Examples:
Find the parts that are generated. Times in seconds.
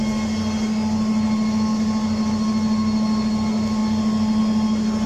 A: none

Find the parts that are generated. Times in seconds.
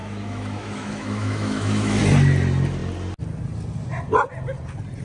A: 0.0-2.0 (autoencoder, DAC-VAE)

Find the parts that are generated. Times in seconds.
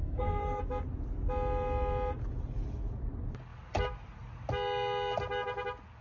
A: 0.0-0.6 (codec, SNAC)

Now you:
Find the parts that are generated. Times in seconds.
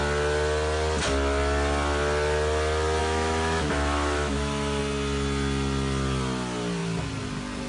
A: 3.0-4.8 (autoencoder, DAC-VAE)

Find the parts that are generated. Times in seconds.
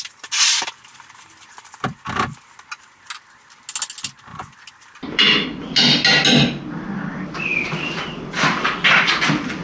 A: none